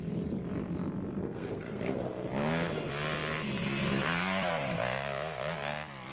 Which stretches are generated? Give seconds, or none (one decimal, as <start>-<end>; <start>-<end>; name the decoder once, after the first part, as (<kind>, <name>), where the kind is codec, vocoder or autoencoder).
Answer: 1.2-2.3 (codec, SNAC)